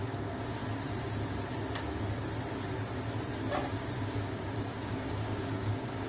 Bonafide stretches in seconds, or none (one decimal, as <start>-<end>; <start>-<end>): 0.6-4.3